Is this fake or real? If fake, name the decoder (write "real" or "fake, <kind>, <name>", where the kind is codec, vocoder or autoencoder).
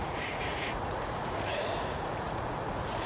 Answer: fake, vocoder, Vocos